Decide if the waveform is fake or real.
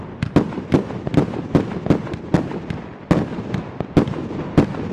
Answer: real